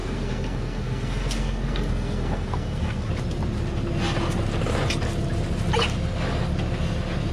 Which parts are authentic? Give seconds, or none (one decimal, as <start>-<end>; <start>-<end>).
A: 3.1-7.3